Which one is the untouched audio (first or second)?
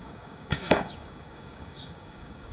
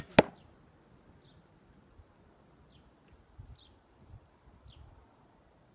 second